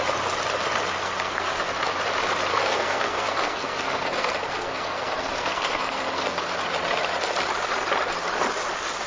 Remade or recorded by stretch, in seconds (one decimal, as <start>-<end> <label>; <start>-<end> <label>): 0.0-1.0 recorded; 1.0-1.7 remade; 1.7-2.5 recorded; 2.5-6.6 remade; 6.6-9.1 recorded